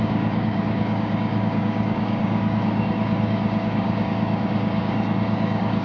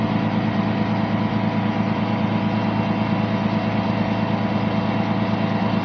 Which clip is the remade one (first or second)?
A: first